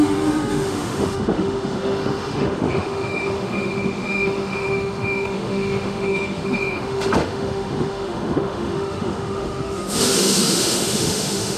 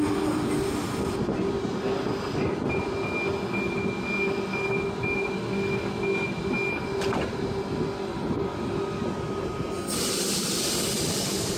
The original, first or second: second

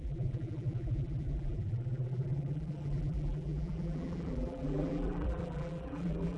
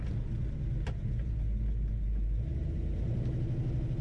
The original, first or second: second